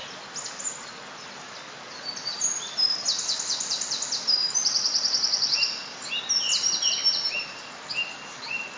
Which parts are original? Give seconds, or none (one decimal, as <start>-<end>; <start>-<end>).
0.0-2.3; 6.1-8.8